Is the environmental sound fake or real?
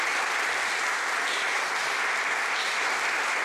real